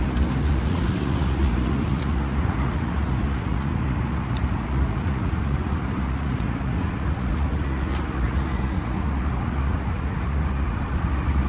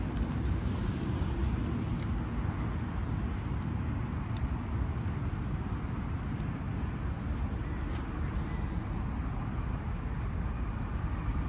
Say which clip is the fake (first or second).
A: first